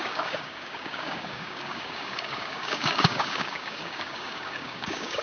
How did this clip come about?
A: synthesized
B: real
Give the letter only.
A